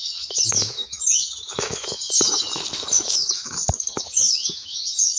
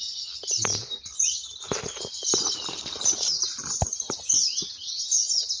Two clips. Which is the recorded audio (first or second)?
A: second